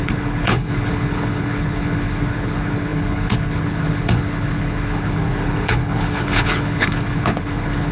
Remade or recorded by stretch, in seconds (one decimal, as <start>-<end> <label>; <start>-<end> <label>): 0.0-7.9 remade